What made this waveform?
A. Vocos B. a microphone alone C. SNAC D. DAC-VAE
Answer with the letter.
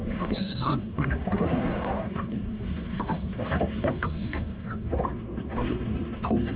C